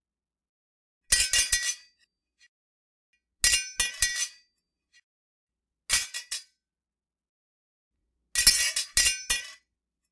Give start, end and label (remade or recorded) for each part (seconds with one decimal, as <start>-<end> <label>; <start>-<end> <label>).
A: 0.0-10.1 recorded